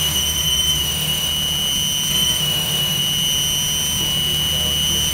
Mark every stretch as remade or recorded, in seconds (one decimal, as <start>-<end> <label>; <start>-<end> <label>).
0.0-1.3 remade; 1.3-2.1 recorded; 2.1-3.0 remade; 3.0-5.1 recorded